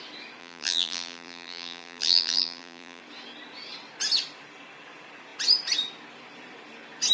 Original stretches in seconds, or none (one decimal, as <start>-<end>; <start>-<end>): 0.0-0.4; 3.0-7.1